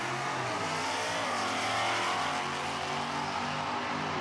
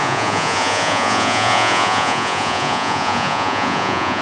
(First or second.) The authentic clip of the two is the first